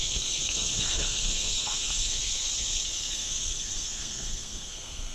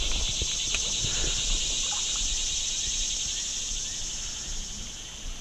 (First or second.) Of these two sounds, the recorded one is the second